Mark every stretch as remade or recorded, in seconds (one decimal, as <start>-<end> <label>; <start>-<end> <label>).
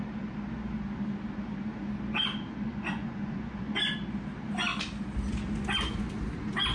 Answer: 0.0-2.7 recorded; 2.7-3.9 remade; 3.9-6.7 recorded